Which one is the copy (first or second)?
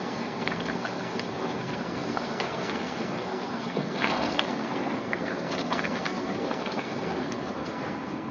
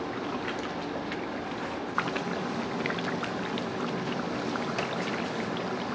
first